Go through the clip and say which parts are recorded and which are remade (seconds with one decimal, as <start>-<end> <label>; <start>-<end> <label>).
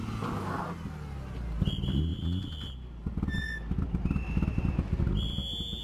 0.0-5.8 recorded